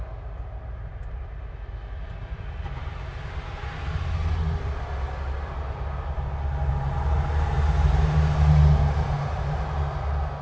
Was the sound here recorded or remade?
recorded